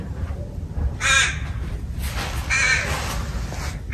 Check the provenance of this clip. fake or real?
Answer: real